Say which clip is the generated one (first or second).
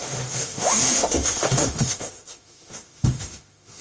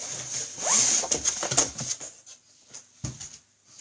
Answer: first